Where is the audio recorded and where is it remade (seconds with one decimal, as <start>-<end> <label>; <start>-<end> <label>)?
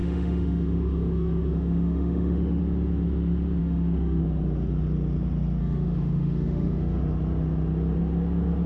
0.0-2.6 remade; 2.6-3.6 recorded; 3.6-4.2 remade; 4.2-5.6 recorded; 5.6-7.0 remade; 7.0-8.7 recorded